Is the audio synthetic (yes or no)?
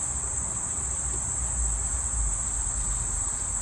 yes